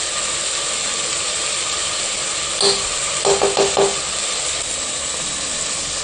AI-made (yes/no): no